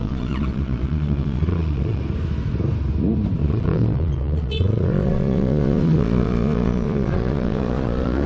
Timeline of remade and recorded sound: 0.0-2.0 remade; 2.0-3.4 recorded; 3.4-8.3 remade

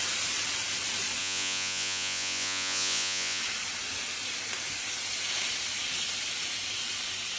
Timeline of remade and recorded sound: 0.0-1.2 recorded; 1.2-3.4 remade; 3.4-7.4 recorded

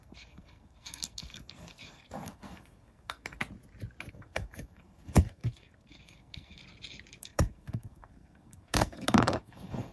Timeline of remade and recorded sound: 0.0-3.4 remade; 3.4-4.1 recorded; 4.1-6.6 remade; 6.6-7.2 recorded; 7.2-9.9 remade

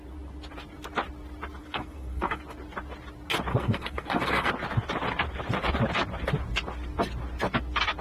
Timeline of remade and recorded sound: 0.0-1.6 recorded; 1.6-2.4 remade; 2.4-3.5 recorded; 3.5-4.5 remade; 4.5-8.0 recorded

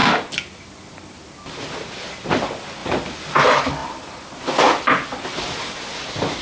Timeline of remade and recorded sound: 0.0-6.4 recorded